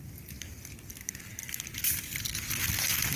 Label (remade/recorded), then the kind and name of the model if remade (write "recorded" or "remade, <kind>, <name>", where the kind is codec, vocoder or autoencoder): recorded